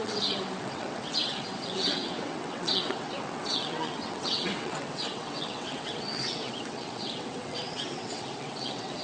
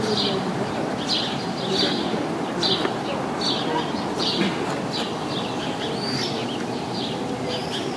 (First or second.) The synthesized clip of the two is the first